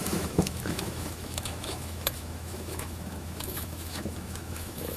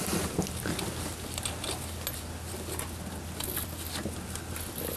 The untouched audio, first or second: second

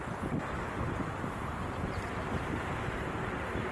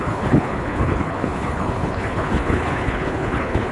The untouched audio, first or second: first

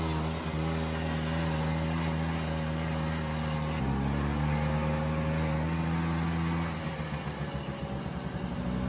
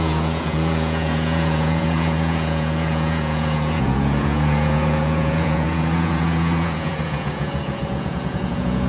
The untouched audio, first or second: first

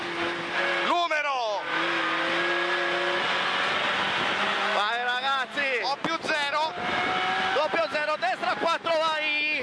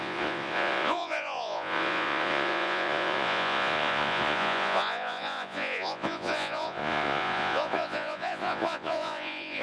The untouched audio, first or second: first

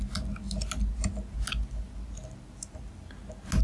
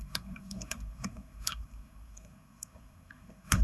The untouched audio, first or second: first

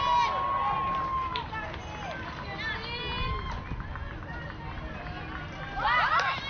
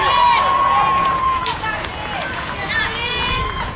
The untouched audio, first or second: first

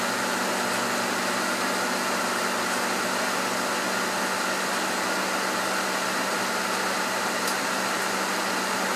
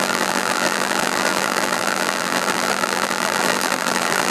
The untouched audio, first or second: first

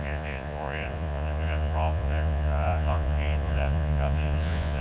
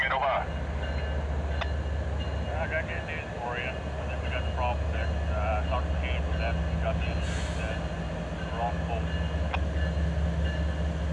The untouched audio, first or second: second